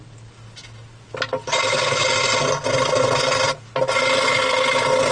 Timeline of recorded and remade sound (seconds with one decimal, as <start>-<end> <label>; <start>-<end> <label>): 0.0-5.1 recorded